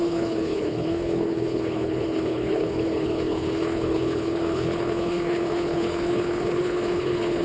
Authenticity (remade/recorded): remade